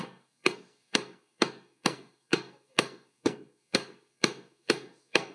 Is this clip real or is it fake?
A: fake